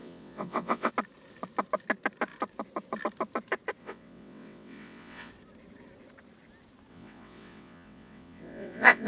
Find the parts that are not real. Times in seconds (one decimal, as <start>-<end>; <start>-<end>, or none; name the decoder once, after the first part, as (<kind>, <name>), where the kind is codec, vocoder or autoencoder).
0.0-0.9 (vocoder, WaveNeXt); 3.8-5.3; 6.9-9.1